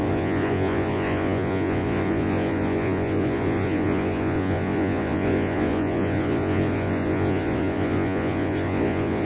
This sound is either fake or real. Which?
fake